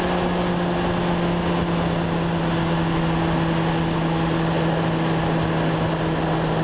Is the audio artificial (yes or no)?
no